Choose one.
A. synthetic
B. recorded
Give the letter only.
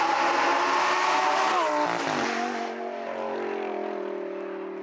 B